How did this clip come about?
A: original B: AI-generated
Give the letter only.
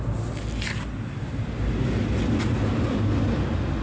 A